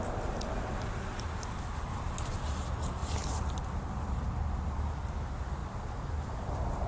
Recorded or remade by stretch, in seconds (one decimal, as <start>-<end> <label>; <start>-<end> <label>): 0.0-6.9 recorded